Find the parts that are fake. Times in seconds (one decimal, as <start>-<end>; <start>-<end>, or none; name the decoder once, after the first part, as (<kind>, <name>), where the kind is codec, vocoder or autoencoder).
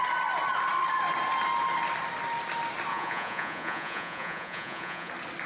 2.9-5.1 (vocoder, Vocos)